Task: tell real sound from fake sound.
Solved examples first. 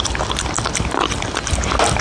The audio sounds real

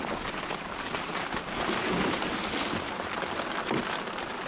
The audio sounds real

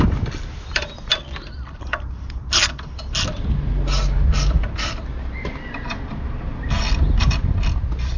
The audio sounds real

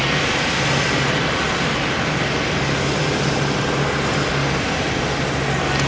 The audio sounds real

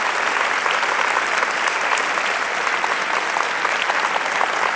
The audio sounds real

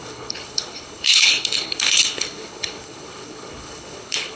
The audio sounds fake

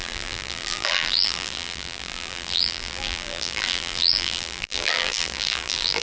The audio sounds fake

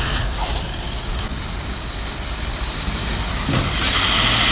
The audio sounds real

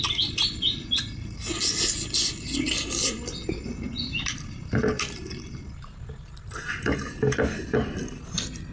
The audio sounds real